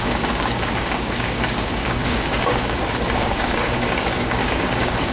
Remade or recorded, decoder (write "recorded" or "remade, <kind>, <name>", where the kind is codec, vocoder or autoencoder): remade, codec, DAC